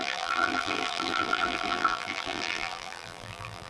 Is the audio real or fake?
fake